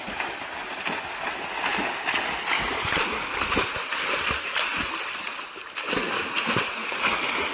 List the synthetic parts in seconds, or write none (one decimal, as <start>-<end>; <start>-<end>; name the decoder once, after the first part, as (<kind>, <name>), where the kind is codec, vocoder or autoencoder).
none